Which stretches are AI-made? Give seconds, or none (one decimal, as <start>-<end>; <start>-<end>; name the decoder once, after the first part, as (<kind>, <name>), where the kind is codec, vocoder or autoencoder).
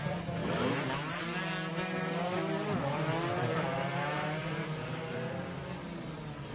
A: 0.4-1.1 (vocoder, BigVGAN v2); 1.7-5.6